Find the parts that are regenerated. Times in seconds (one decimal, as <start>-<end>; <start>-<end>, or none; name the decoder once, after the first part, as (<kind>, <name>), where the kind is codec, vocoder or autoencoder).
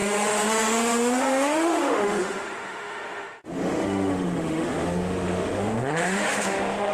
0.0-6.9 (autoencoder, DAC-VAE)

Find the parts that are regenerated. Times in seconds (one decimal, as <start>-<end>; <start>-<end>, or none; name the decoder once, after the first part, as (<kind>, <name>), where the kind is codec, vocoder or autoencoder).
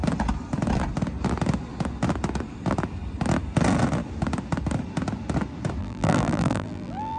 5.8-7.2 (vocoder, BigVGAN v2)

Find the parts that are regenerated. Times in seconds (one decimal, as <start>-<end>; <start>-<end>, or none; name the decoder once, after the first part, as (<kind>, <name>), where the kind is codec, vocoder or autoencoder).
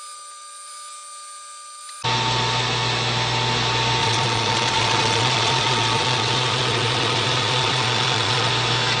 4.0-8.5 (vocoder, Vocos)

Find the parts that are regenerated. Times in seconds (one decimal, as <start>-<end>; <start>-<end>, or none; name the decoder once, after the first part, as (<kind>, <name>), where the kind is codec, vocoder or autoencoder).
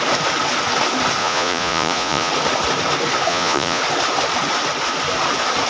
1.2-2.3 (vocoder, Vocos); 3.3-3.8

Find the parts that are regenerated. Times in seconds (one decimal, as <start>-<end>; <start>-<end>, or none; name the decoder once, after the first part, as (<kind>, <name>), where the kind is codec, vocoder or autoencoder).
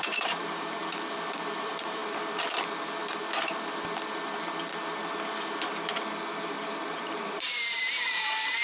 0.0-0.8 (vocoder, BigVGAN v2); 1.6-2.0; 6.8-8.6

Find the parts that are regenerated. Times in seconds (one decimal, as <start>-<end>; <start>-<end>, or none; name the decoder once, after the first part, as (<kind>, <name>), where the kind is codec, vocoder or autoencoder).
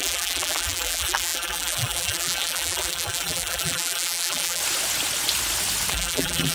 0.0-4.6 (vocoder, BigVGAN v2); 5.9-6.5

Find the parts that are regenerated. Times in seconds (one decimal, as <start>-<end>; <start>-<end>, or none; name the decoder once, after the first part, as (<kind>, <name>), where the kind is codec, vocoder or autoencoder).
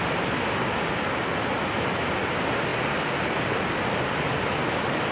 2.7-3.6 (vocoder, BigVGAN v2)